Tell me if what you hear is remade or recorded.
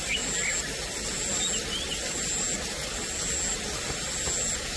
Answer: recorded